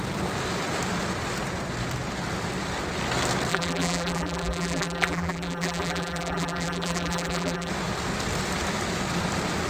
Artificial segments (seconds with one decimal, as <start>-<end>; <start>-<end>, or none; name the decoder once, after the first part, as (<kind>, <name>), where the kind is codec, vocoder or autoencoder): 3.5-7.7 (vocoder, BigVGAN v2)

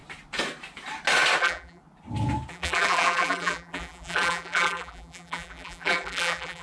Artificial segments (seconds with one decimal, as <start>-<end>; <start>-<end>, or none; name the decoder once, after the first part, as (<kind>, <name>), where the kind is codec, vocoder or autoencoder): 1.4-1.8 (vocoder, BigVGAN v2); 2.5-6.6

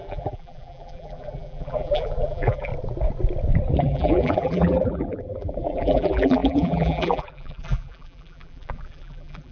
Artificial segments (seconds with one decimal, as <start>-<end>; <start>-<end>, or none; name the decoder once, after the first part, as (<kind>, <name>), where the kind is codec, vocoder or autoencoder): 0.0-2.7 (vocoder, BigVGAN v2); 3.8-9.5

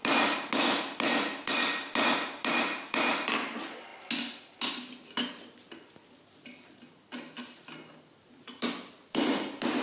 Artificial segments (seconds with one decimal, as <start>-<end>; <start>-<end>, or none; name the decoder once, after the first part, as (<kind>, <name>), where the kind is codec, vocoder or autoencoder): none

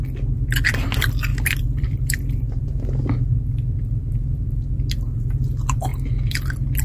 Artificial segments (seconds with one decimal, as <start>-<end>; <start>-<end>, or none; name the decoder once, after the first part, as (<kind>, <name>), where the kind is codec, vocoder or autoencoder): 1.3-5.4 (vocoder, BigVGAN v2)

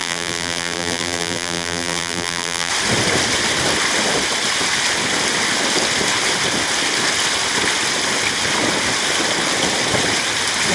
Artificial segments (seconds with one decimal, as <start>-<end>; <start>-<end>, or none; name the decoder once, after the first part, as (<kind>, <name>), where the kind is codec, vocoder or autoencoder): 0.0-2.7 (vocoder, BigVGAN v2)